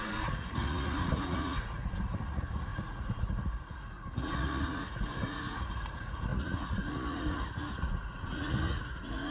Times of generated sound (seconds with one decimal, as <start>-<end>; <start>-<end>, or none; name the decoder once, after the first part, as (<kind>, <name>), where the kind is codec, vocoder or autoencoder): 0.0-9.3 (vocoder, Vocos)

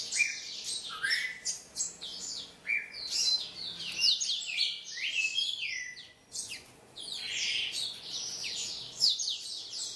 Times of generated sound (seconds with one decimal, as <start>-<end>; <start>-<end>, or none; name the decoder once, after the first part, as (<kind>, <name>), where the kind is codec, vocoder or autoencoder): 2.1-3.0 (vocoder, Vocos); 5.3-9.4

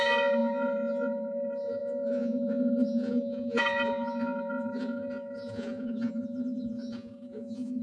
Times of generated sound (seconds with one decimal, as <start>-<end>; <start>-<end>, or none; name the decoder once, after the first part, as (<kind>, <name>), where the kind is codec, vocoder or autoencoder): 0.0-7.8 (vocoder, Vocos)

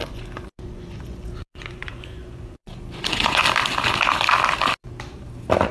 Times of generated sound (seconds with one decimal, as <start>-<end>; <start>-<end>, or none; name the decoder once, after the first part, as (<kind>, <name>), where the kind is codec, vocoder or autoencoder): 0.0-3.4 (vocoder, Vocos)

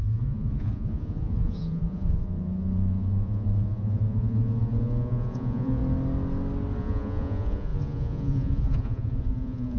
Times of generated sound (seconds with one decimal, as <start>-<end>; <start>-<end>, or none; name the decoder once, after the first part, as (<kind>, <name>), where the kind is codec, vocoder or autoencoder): 0.0-5.8 (vocoder, Vocos); 6.8-9.8

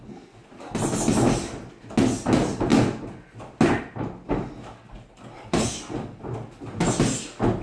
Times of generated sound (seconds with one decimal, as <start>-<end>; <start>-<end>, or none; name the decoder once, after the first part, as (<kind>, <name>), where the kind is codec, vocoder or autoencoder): none

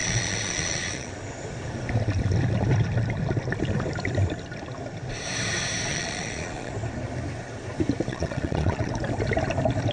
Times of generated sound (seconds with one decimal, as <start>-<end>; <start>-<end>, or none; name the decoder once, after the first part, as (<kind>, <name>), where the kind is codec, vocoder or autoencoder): 0.0-1.1 (vocoder, Vocos); 5.9-6.7; 8.1-8.9

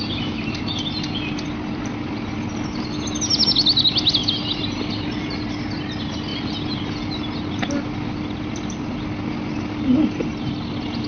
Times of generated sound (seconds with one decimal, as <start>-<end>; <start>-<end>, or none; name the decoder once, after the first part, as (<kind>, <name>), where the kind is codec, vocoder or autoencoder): none